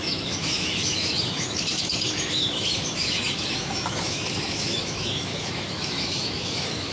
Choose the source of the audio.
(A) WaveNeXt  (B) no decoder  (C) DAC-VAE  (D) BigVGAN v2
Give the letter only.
C